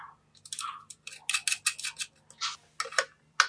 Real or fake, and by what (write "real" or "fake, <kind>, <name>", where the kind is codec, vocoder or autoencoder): real